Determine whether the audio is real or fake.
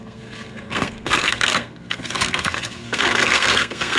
fake